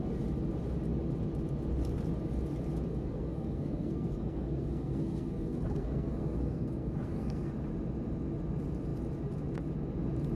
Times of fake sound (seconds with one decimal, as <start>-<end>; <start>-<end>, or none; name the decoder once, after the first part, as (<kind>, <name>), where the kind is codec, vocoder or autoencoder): 2.9-7.5 (codec, SNAC)